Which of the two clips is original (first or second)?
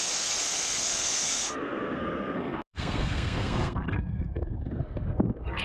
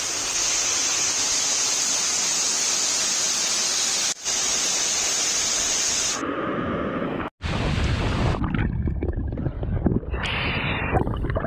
second